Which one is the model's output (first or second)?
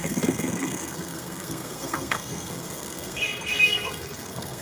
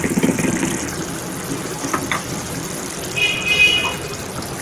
first